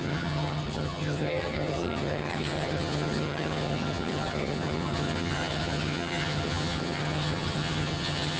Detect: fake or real fake